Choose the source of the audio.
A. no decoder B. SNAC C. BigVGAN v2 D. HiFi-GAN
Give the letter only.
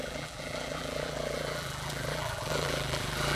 C